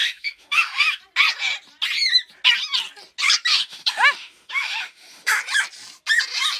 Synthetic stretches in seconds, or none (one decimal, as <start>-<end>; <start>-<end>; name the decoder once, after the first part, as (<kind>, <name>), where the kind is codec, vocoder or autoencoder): 0.0-1.0 (autoencoder, DAC-VAE); 3.5-5.4